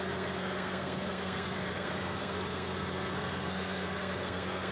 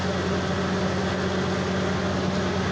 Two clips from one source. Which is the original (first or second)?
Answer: second